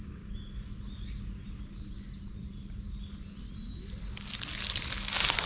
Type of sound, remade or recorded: recorded